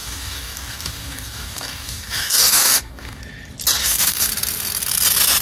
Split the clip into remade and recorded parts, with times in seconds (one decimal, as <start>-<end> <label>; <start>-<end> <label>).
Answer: 0.0-3.2 remade; 3.2-3.8 recorded; 3.8-4.3 remade; 4.3-5.4 recorded